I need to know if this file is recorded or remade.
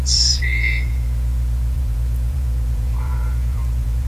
remade